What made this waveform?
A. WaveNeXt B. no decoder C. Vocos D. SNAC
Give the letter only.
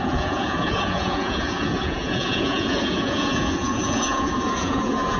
C